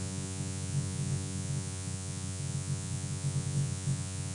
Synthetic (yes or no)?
yes